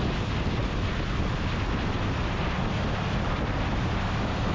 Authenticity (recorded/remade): recorded